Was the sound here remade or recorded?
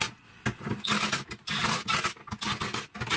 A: recorded